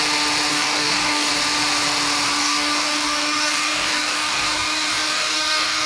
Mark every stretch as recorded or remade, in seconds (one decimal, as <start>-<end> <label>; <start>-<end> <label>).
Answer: 0.0-0.5 recorded; 0.5-1.3 remade; 1.3-2.4 recorded; 2.4-5.9 remade